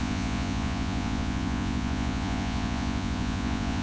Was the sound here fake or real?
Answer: fake